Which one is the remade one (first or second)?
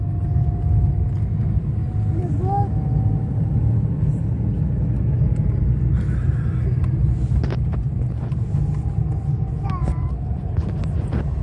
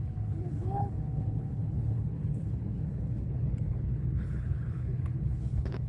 second